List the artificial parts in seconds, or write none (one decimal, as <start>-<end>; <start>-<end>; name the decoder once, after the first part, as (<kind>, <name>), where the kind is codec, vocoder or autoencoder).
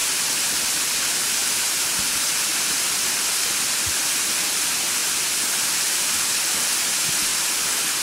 none